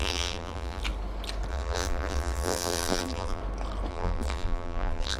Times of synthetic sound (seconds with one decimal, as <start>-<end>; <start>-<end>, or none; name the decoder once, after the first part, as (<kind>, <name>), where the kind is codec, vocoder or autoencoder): 0.0-0.8 (vocoder, BigVGAN v2); 1.5-3.4; 3.9-5.2